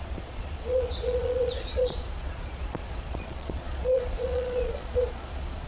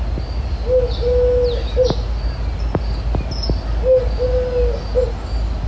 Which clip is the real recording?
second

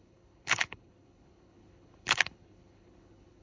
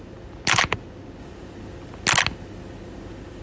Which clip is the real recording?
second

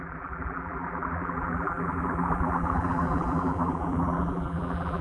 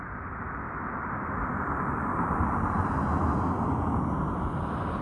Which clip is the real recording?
second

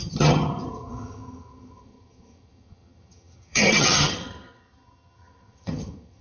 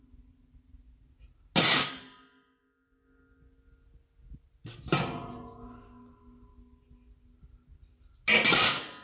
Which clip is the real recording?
second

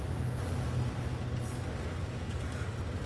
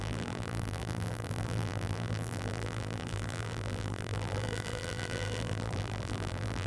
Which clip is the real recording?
first